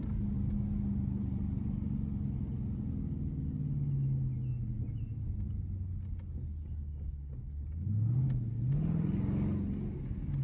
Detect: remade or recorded recorded